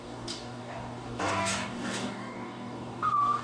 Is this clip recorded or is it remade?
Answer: remade